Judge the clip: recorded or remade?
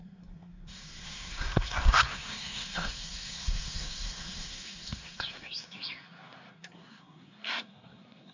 remade